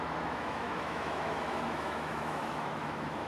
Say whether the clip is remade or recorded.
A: remade